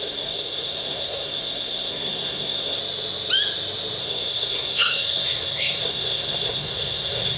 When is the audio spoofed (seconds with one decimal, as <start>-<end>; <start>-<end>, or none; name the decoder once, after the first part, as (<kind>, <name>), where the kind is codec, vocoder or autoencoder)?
0.0-2.8 (codec, SNAC); 4.0-7.4